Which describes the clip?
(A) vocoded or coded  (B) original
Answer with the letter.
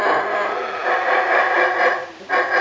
B